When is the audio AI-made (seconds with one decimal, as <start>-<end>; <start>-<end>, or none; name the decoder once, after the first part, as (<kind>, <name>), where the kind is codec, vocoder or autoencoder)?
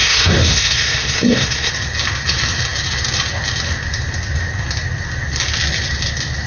0.0-1.7 (codec, SNAC)